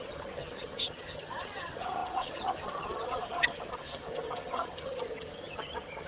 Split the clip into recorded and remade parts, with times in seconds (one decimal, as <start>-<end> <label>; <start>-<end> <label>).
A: 0.0-6.1 remade